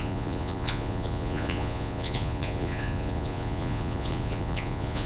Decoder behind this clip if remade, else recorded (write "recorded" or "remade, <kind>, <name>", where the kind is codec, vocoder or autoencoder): remade, vocoder, Vocos